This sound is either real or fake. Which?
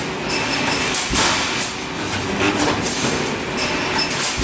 real